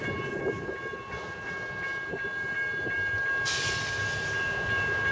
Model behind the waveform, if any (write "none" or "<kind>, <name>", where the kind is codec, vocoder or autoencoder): none